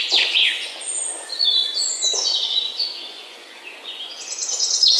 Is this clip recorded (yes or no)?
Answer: no